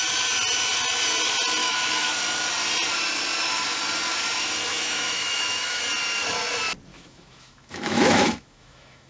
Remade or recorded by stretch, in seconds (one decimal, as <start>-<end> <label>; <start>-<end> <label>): 0.0-1.6 recorded; 1.6-2.1 remade; 2.1-4.7 recorded; 4.7-5.8 remade; 5.8-6.9 recorded; 6.9-9.1 remade

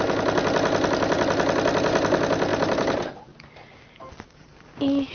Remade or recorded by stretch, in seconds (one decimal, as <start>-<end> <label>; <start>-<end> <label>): 0.0-5.1 recorded

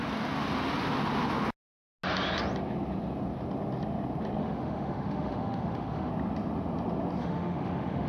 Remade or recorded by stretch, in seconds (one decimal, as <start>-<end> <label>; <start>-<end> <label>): 0.0-4.4 recorded; 4.4-6.1 remade; 6.1-7.2 recorded; 7.2-8.1 remade

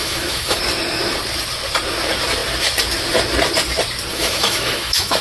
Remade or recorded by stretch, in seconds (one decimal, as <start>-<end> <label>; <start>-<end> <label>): 0.0-0.6 remade; 0.6-4.1 recorded; 4.1-5.2 remade

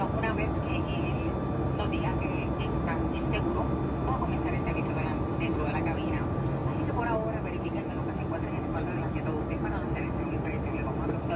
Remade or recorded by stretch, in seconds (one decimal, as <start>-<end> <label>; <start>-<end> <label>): 0.0-11.4 recorded

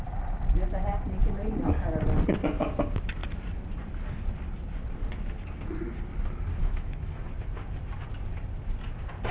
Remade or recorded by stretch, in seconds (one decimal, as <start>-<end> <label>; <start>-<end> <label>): 0.0-6.6 recorded; 6.6-7.3 remade; 7.3-9.3 recorded

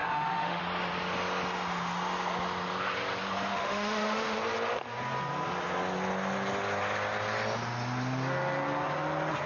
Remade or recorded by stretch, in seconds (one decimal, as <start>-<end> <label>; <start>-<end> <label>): 0.0-0.6 remade; 0.6-3.5 recorded; 3.5-4.4 remade; 4.4-9.5 recorded

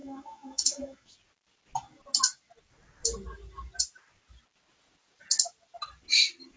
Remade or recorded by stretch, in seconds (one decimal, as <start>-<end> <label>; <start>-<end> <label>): 0.0-1.1 remade; 1.1-6.6 recorded